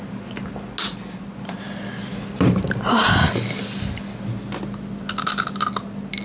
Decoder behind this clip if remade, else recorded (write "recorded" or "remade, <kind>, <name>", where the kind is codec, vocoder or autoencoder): recorded